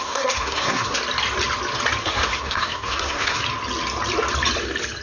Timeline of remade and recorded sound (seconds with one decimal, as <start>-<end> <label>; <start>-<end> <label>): 0.0-1.0 remade; 1.0-2.0 recorded; 2.0-3.4 remade; 3.4-5.0 recorded